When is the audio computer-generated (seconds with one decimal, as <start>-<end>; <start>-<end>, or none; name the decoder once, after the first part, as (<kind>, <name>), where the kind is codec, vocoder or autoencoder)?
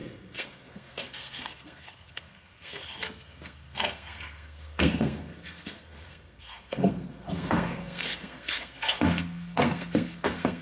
0.0-10.6 (codec, SNAC)